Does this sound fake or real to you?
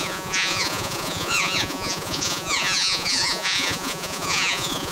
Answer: fake